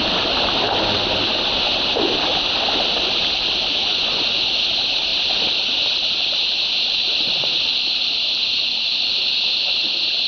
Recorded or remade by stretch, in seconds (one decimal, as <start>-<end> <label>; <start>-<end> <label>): 0.0-3.8 recorded; 3.8-4.4 remade; 4.4-10.3 recorded